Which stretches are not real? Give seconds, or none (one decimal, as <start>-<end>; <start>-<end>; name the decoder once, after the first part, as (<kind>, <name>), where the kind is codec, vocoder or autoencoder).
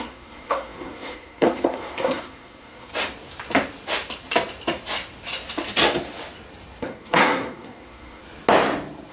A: 0.0-2.9 (codec, SNAC); 6.8-8.2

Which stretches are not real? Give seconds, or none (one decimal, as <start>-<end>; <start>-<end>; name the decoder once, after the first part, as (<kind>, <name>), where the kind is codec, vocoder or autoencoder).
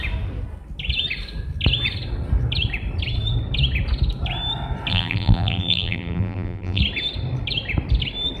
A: 4.9-6.8 (vocoder, BigVGAN v2)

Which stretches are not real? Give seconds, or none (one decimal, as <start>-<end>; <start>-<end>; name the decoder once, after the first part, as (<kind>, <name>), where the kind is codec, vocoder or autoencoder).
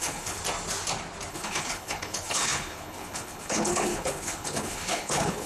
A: 0.0-0.4 (codec, HILCodec); 1.3-5.5